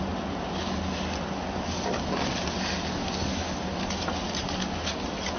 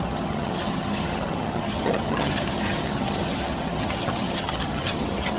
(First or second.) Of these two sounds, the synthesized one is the second